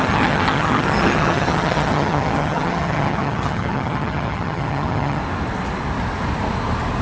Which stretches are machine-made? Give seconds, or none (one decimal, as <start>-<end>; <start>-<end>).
0.0-5.2